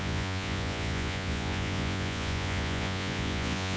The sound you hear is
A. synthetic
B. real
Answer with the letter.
A